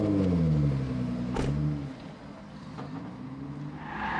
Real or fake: real